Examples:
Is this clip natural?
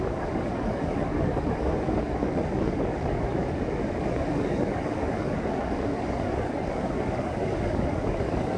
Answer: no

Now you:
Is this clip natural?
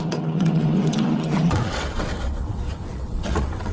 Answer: no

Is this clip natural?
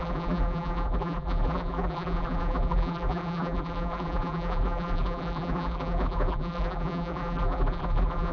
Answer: no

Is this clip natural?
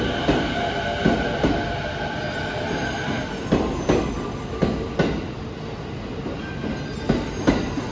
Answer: yes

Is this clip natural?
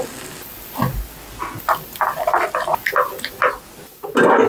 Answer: yes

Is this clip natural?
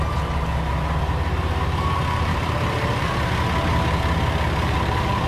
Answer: yes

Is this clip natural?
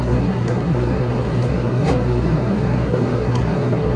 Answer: no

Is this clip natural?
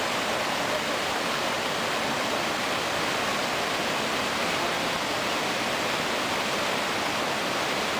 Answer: yes